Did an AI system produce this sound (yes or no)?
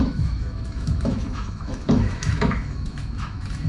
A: yes